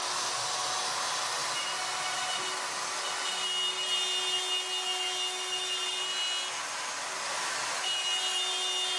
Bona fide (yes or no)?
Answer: yes